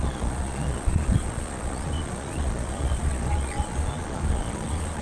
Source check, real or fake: fake